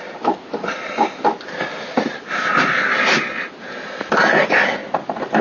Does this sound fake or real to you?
real